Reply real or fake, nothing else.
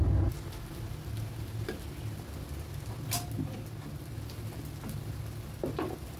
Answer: real